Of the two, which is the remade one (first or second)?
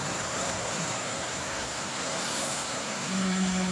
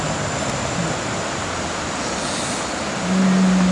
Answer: first